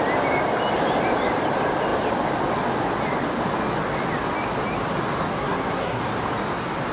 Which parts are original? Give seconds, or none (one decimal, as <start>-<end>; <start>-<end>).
0.0-5.3; 6.0-6.9